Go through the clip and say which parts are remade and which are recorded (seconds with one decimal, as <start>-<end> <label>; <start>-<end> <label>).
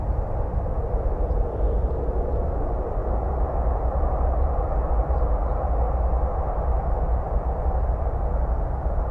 0.0-9.1 recorded